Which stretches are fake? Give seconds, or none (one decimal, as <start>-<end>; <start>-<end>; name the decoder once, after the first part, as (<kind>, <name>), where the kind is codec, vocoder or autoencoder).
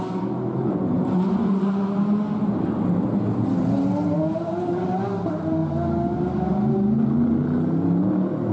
none